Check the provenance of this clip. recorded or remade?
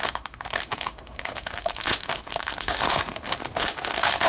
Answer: remade